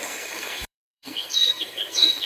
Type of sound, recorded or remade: remade